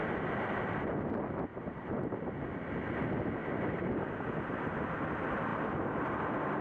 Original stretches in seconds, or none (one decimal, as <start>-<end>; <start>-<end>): 0.0-1.5; 2.2-3.4; 3.9-6.6